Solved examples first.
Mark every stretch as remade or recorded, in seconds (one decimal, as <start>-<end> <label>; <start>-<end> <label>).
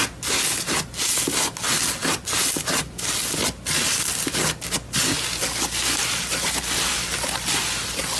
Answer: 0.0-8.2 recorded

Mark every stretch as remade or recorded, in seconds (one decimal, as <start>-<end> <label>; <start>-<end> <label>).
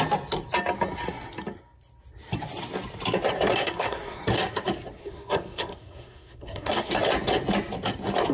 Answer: 0.0-3.6 recorded; 3.6-4.2 remade; 4.2-5.0 recorded; 5.0-6.9 remade; 6.9-8.3 recorded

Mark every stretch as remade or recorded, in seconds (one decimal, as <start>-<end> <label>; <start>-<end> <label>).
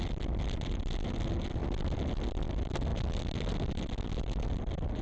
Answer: 0.0-5.0 recorded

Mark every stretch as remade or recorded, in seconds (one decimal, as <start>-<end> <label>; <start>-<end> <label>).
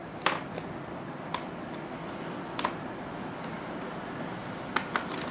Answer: 0.0-5.3 recorded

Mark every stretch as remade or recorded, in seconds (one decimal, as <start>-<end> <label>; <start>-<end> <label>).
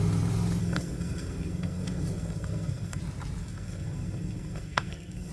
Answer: 0.0-0.6 recorded; 0.6-3.0 remade; 3.0-3.4 recorded; 3.4-5.3 remade